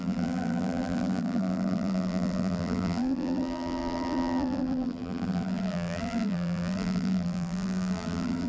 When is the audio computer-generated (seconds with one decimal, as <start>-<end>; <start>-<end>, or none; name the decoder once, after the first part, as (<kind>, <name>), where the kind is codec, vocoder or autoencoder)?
0.0-8.5 (vocoder, BigVGAN v2)